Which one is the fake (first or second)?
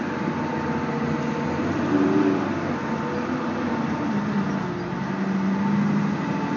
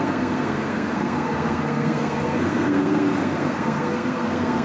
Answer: second